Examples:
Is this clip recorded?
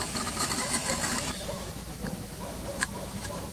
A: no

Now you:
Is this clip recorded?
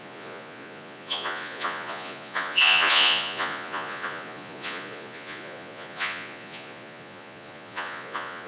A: no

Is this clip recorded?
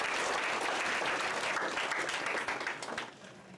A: yes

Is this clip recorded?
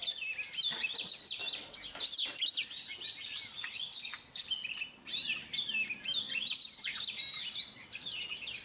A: yes